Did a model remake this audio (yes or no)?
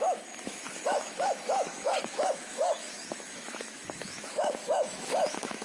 yes